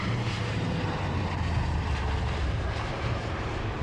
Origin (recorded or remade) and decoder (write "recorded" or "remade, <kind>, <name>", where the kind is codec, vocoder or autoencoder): remade, vocoder, BigVGAN v2